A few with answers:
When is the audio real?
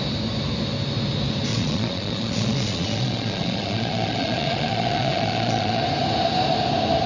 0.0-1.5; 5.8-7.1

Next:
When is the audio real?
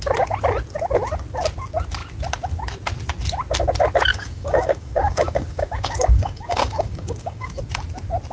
0.0-4.1; 7.6-8.3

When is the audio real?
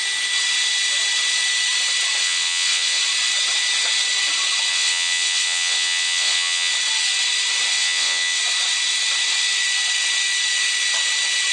0.0-2.2; 3.0-4.7; 6.7-7.7; 8.4-11.5